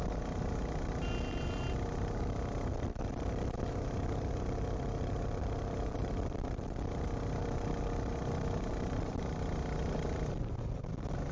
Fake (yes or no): no